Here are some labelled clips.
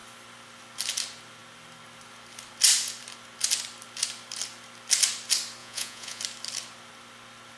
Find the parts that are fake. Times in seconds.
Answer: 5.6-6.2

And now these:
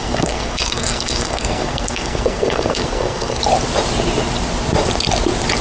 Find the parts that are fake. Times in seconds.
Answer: 0.0-3.4

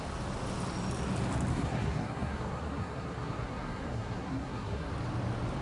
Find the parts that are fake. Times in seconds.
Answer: 1.5-4.9

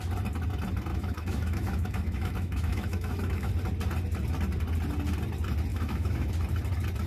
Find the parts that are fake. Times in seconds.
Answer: 0.9-3.5; 5.7-6.3

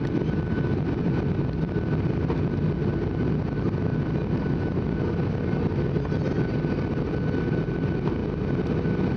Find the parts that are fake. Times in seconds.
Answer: none

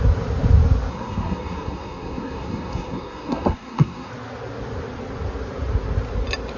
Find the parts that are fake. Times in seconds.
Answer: 0.9-4.1